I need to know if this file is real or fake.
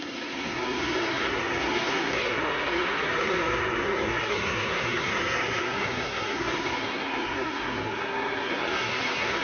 fake